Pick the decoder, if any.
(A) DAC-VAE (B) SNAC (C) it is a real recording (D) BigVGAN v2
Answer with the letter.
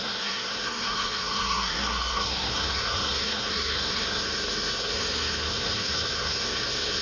B